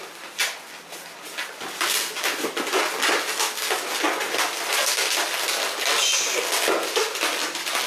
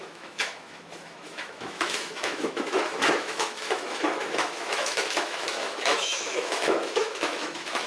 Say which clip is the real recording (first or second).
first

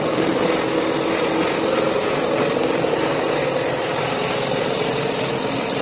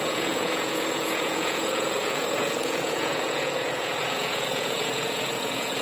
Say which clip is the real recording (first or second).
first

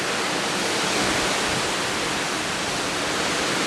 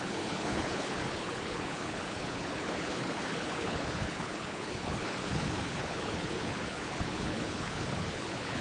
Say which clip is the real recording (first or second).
first